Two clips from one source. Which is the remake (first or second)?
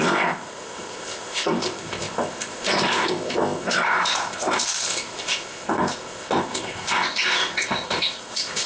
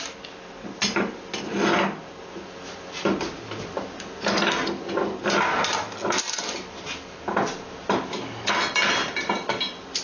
first